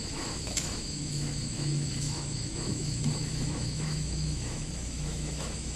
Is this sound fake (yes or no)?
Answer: yes